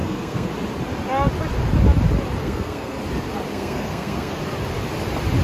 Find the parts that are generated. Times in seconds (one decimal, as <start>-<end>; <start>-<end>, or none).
0.0-0.5; 2.4-3.0; 3.5-4.4